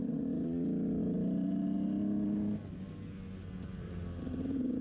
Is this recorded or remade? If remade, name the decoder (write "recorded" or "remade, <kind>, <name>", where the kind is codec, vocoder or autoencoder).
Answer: recorded